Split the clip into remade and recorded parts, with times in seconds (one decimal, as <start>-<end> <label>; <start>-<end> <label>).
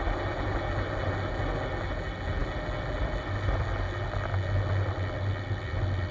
0.0-6.1 recorded